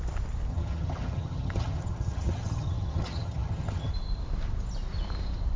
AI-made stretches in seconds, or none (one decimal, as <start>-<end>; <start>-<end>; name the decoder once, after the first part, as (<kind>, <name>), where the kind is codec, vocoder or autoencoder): 0.5-3.9 (vocoder, HiFi-GAN)